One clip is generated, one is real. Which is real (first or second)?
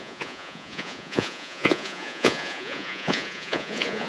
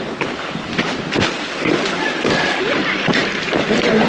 second